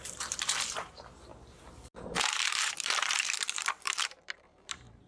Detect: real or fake fake